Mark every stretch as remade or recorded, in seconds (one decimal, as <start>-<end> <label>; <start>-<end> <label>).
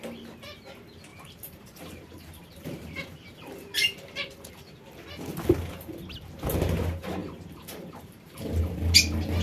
0.0-1.1 recorded; 1.1-4.8 remade; 4.8-7.2 recorded; 7.2-8.6 remade; 8.6-9.4 recorded